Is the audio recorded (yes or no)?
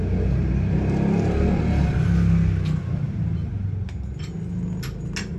yes